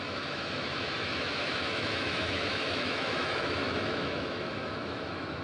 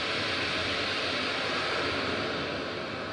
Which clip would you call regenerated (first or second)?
first